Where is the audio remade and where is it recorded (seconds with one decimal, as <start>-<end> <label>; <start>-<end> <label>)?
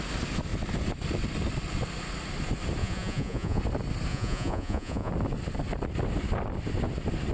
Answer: 0.0-2.8 recorded; 2.8-3.6 remade; 3.6-4.1 recorded; 4.1-5.1 remade; 5.1-7.3 recorded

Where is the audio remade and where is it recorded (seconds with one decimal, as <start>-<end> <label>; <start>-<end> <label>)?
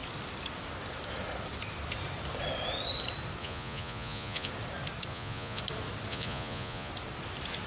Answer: 0.0-3.4 recorded; 3.4-4.5 remade; 4.5-5.1 recorded; 5.1-5.6 remade; 5.6-6.1 recorded; 6.1-6.9 remade; 6.9-7.7 recorded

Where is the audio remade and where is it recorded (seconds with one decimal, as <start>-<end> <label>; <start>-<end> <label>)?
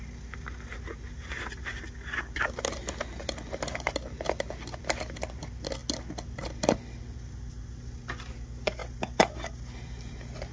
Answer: 0.0-10.5 recorded